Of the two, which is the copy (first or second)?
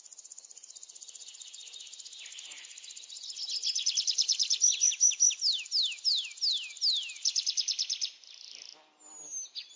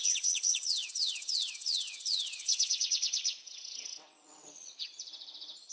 second